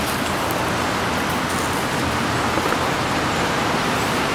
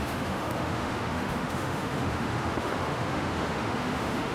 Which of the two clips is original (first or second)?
first